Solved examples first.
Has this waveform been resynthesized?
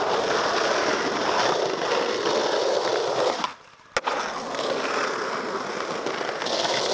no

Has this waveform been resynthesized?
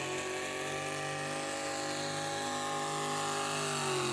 no